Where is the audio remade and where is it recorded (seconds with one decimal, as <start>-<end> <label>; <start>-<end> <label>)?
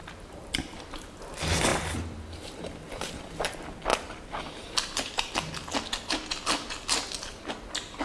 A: 0.0-1.2 remade; 1.2-1.7 recorded; 1.7-3.2 remade; 3.2-3.9 recorded; 3.9-5.3 remade; 5.3-8.0 recorded